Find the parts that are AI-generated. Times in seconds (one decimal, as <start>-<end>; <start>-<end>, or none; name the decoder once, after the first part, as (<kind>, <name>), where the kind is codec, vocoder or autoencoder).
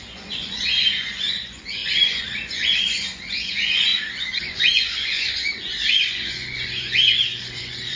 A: 0.0-8.0 (vocoder, Vocos)